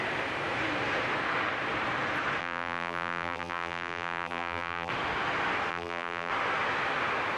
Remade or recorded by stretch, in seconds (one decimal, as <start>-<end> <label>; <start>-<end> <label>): 0.0-2.4 recorded; 2.4-4.9 remade; 4.9-5.7 recorded; 5.7-6.3 remade; 6.3-7.4 recorded

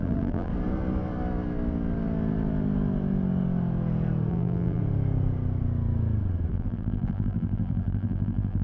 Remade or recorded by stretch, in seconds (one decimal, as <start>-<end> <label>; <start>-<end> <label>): 0.0-0.5 remade; 0.5-4.3 recorded; 4.3-4.8 remade; 4.8-6.5 recorded; 6.5-8.6 remade

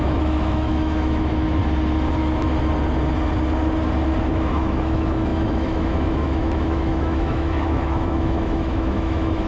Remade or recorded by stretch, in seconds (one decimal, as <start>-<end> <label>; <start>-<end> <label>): 0.0-1.6 remade; 1.6-4.2 recorded; 4.2-9.5 remade

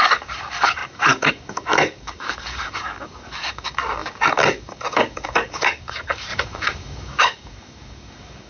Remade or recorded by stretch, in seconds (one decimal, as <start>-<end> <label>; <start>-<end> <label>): 0.0-8.5 remade

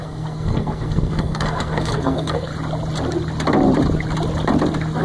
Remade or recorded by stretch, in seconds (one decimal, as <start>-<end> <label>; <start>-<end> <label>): 0.0-2.5 remade; 2.5-5.0 recorded